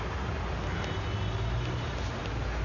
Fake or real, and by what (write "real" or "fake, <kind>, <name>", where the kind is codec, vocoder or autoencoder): real